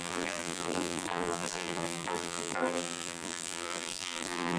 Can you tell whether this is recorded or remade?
remade